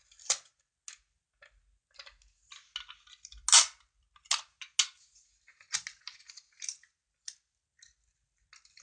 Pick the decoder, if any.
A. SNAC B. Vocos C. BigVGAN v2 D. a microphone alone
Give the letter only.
D